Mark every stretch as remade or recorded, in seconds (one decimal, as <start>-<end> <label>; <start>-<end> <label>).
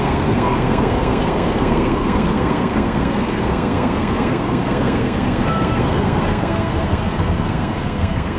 0.0-8.4 remade